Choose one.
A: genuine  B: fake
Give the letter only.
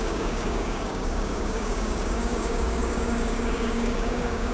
B